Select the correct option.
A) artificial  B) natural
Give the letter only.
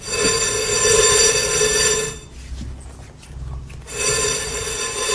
B